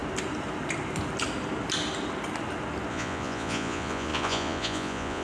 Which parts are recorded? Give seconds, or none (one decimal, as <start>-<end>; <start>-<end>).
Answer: 0.0-2.9